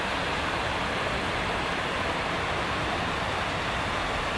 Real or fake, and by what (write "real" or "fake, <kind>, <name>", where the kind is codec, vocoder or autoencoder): real